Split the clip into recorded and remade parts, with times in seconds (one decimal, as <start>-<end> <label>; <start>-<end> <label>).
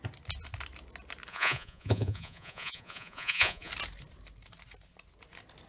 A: 0.0-1.3 recorded; 1.3-3.7 remade; 3.7-5.7 recorded